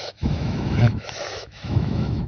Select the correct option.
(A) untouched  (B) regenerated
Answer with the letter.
B